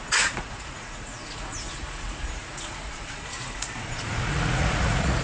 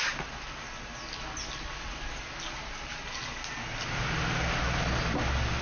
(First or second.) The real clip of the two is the second